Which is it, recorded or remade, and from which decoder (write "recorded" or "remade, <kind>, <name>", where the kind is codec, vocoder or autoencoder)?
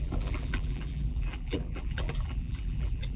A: remade, vocoder, BigVGAN v2